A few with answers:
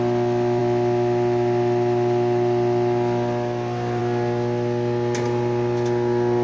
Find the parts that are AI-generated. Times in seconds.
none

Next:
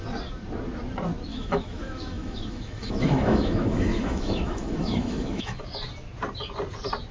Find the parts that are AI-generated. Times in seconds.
1.3-5.6

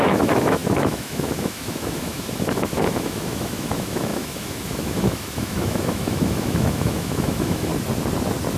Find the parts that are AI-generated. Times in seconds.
0.0-7.7

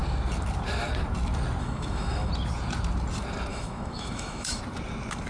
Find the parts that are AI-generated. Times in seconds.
1.6-2.3; 3.5-4.6

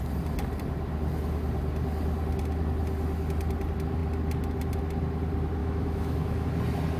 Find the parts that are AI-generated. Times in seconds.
5.6-6.5

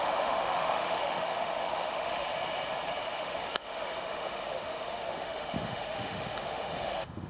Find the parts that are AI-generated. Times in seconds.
0.0-2.3; 3.0-7.3